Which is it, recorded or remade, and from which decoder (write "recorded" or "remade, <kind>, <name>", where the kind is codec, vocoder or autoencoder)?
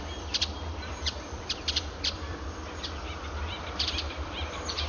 remade, vocoder, BigVGAN v2